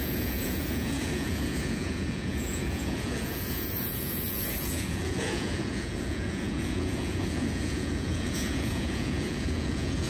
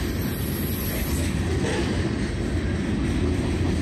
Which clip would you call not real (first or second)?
first